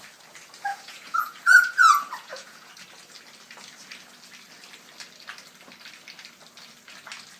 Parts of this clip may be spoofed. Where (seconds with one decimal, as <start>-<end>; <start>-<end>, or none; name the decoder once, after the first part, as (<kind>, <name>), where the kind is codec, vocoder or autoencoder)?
0.7-2.7 (vocoder, Vocos)

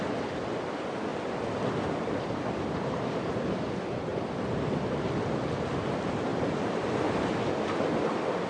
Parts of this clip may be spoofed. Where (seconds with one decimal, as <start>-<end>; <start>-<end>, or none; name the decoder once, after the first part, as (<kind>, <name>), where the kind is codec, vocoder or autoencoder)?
1.1-3.6 (vocoder, BigVGAN v2); 4.1-5.6; 6.3-7.3

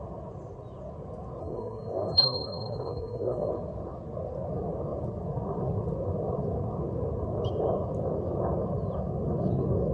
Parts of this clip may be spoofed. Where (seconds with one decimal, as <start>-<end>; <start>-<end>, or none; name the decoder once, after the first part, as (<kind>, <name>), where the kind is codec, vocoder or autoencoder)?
1.4-3.5 (codec, SNAC)

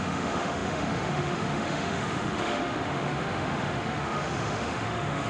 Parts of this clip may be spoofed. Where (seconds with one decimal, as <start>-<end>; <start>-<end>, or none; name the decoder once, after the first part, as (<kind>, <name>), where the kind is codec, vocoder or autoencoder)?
0.0-5.3 (autoencoder, DAC-VAE)

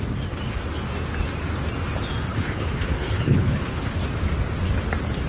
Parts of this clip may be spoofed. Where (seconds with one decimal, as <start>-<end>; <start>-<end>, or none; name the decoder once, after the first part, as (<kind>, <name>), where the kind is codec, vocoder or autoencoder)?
2.3-4.0 (codec, HILCodec)

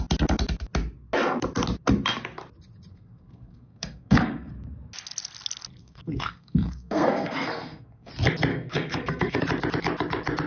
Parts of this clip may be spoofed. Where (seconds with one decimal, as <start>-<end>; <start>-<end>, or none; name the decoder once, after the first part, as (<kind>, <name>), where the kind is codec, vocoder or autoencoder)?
2.9-4.5 (codec, SNAC); 5.8-8.1; 8.5-9.4

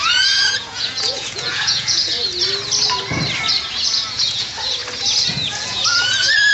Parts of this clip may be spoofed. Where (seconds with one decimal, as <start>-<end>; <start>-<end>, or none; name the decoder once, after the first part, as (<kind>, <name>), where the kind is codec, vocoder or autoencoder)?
0.0-2.2 (vocoder, Vocos); 3.6-4.8; 5.3-6.5